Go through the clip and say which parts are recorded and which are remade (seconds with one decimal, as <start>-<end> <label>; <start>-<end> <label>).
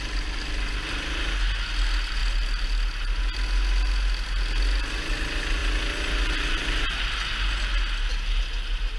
0.0-5.6 recorded; 5.6-6.6 remade; 6.6-9.0 recorded